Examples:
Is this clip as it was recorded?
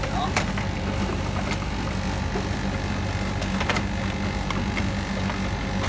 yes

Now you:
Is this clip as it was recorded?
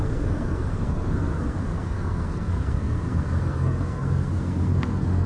no